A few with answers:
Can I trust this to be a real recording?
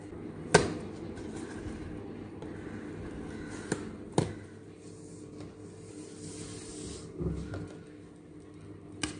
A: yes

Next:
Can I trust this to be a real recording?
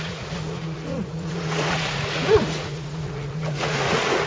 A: no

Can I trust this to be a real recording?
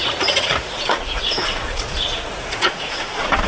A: no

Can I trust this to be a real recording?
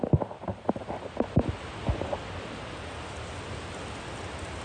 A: yes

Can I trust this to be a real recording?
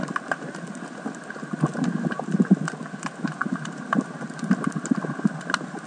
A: yes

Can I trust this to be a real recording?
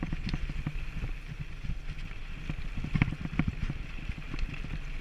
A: yes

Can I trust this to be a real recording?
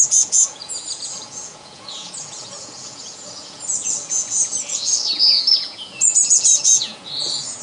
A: no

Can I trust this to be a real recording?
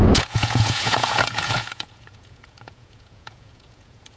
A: no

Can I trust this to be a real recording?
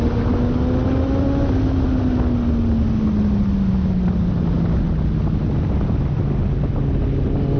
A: yes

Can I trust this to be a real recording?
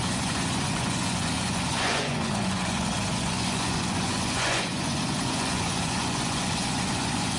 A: no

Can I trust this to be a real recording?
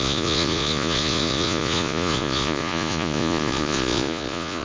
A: no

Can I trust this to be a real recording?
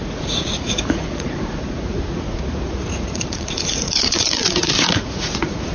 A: no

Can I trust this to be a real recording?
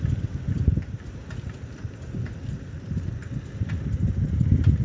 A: yes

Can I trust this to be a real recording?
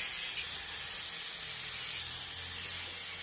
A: yes